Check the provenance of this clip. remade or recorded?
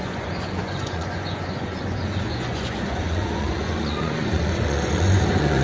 remade